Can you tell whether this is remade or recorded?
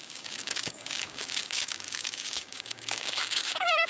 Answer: remade